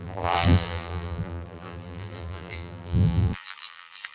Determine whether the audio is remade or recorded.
remade